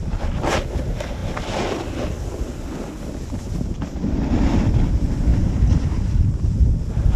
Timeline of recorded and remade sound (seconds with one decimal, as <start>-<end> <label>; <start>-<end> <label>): 0.0-5.3 recorded; 5.3-7.2 remade

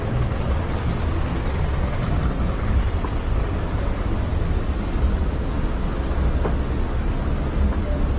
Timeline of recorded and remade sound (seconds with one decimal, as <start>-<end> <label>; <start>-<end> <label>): 0.0-8.2 recorded

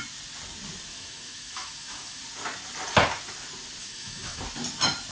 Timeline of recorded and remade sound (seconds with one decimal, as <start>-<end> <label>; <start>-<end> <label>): 0.0-0.9 recorded; 0.9-2.2 remade; 2.2-3.8 recorded; 3.8-4.4 remade; 4.4-5.1 recorded

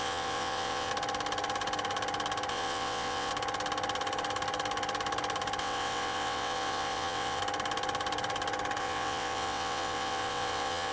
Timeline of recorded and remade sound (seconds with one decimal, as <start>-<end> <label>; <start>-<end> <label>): 0.0-0.9 remade; 0.9-2.5 recorded; 2.5-3.3 remade; 3.3-5.6 recorded; 5.6-7.4 remade; 7.4-8.8 recorded; 8.8-10.9 remade

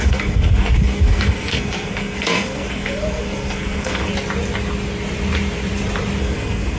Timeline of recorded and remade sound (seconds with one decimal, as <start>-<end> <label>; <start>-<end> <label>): 0.0-4.1 remade; 4.1-6.2 recorded; 6.2-6.8 remade

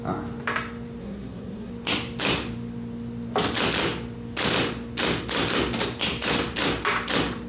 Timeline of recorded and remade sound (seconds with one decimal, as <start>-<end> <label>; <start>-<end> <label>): 0.0-1.0 recorded; 1.0-1.7 remade; 1.7-7.5 recorded